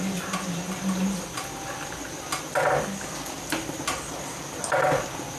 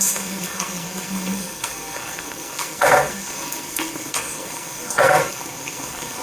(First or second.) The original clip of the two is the first